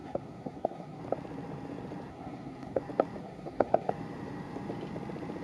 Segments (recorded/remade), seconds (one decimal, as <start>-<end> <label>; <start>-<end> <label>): 0.0-1.0 remade; 1.0-2.1 recorded; 2.1-2.8 remade; 2.8-3.2 recorded; 3.2-3.9 remade; 3.9-5.4 recorded